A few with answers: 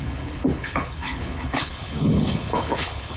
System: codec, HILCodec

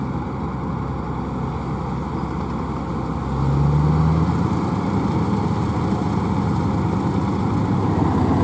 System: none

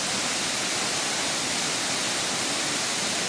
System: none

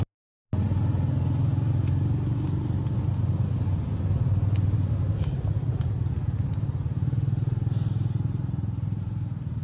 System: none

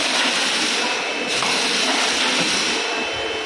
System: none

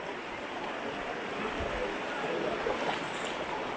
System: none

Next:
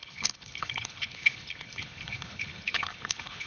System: codec, HILCodec